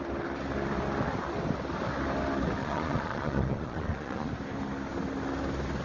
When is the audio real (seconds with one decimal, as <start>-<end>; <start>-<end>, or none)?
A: 0.0-2.6; 4.3-5.8